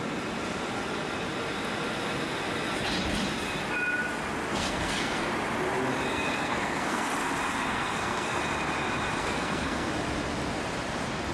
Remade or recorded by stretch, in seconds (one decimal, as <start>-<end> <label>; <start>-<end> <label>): 0.0-4.5 recorded; 4.5-5.3 remade; 5.3-6.1 recorded; 6.1-7.1 remade; 7.1-7.5 recorded; 7.5-8.4 remade; 8.4-9.2 recorded; 9.2-9.9 remade; 9.9-11.3 recorded